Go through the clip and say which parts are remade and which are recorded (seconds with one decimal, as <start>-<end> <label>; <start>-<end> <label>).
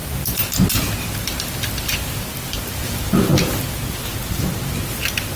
0.0-5.4 recorded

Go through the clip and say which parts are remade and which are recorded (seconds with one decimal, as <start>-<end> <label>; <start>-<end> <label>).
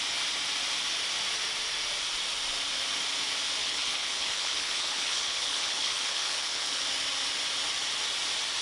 0.0-3.6 recorded; 3.6-6.8 remade; 6.8-8.6 recorded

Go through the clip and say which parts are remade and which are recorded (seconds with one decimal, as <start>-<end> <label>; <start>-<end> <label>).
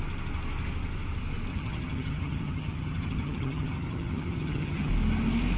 0.0-1.5 recorded; 1.5-4.9 remade; 4.9-5.6 recorded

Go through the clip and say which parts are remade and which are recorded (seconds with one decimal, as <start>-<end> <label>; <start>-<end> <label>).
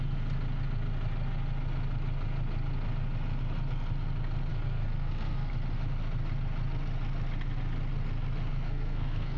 0.0-4.5 recorded; 4.5-5.5 remade; 5.5-8.5 recorded; 8.5-9.4 remade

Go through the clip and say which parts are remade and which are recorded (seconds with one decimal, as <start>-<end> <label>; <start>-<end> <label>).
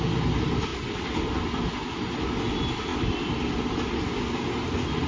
0.0-5.1 recorded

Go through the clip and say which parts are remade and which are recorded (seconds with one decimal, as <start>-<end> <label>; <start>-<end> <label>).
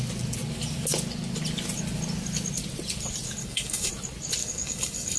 0.0-3.4 recorded; 3.4-3.9 remade; 3.9-4.4 recorded; 4.4-5.2 remade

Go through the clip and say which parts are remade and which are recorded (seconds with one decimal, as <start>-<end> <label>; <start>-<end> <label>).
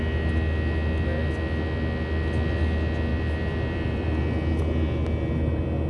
0.0-3.1 recorded; 3.1-4.2 remade; 4.2-5.9 recorded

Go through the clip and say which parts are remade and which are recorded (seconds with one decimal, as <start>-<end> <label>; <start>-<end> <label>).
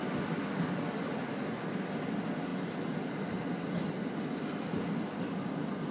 0.0-5.9 recorded